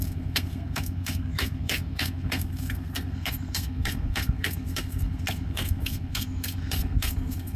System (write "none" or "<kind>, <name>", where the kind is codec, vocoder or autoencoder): codec, SNAC